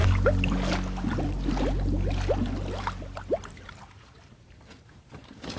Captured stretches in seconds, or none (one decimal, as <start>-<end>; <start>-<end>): 0.0-3.4